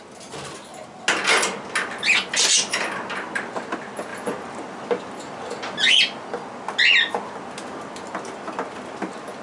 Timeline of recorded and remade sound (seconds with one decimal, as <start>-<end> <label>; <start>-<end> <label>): 0.0-9.4 recorded